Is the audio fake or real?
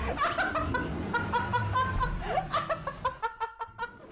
real